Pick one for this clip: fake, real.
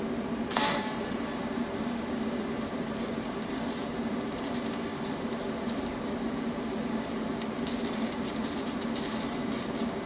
fake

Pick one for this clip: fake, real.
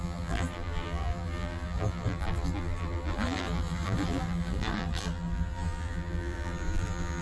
fake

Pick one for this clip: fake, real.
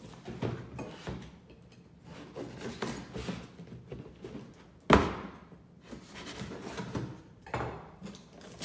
real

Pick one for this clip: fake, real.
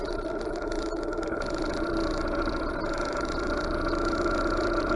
fake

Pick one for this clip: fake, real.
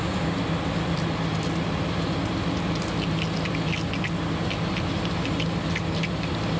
real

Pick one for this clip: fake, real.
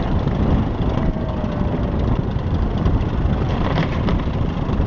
fake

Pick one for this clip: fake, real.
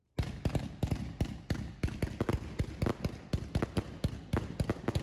real